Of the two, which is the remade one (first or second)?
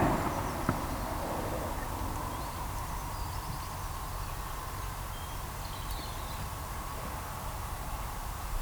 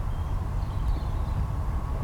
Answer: second